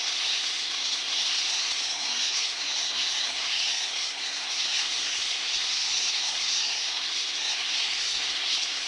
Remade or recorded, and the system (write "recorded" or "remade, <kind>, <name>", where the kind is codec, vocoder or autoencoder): remade, codec, SNAC